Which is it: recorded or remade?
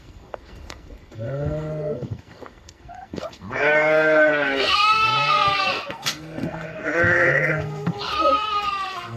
remade